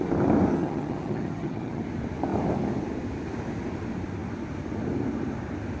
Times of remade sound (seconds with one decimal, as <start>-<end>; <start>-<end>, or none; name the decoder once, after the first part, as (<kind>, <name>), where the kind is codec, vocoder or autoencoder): 0.5-1.8 (vocoder, HiFi-GAN)